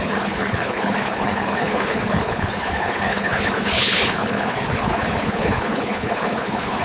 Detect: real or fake fake